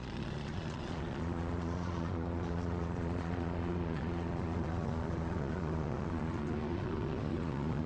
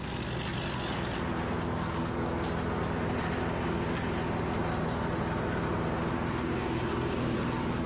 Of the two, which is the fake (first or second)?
first